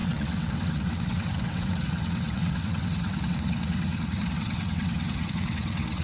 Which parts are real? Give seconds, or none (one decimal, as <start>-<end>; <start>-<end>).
none